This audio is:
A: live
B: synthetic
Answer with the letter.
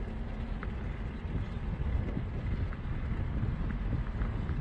A